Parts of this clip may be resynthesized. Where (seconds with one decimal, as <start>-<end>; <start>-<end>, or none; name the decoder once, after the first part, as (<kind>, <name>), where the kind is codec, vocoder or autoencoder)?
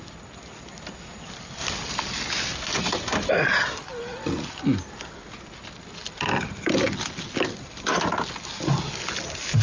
none